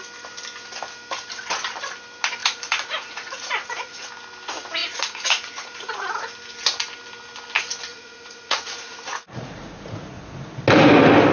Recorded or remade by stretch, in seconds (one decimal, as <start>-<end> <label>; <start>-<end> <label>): 0.0-2.4 recorded; 2.4-4.1 remade; 4.1-4.8 recorded; 4.8-6.3 remade; 6.3-7.9 recorded; 7.9-10.6 remade; 10.6-11.3 recorded